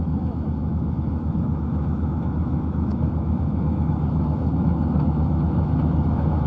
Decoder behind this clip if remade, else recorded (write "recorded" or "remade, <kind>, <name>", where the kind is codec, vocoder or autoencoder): remade, autoencoder, DAC-VAE